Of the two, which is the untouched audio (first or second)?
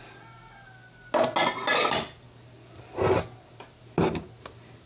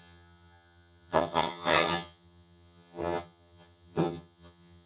first